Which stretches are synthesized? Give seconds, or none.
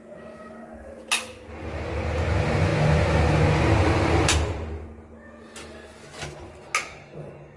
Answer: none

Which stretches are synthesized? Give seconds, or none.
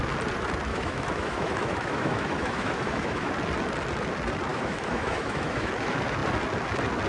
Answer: 0.7-3.3 (autoencoder, DAC-VAE); 4.5-5.7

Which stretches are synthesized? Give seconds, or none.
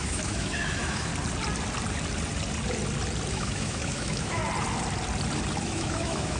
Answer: 0.0-1.1 (autoencoder, DAC-VAE); 3.3-4.4; 5.6-6.4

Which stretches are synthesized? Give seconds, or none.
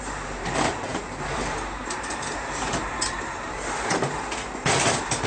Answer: 0.0-5.3 (vocoder, BigVGAN v2)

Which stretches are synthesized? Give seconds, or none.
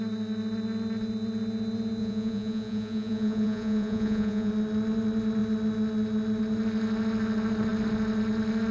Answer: 2.0-4.5 (vocoder, Vocos)